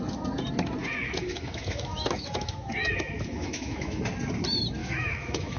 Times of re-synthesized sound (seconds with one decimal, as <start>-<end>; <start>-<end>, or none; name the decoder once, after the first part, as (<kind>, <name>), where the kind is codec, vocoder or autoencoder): 0.8-4.0 (autoencoder, DAC-VAE); 4.8-5.6